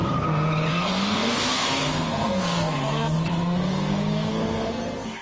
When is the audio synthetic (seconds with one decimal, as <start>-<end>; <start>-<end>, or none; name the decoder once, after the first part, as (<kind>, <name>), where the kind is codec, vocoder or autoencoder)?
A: 0.7-5.2 (codec, SNAC)